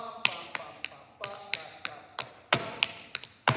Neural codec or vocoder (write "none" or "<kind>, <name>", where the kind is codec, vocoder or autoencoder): none